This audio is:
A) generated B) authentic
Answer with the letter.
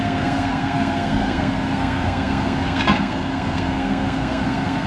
A